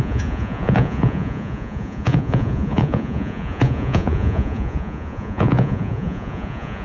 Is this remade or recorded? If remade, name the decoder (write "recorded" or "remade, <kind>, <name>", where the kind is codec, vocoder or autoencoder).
remade, vocoder, Vocos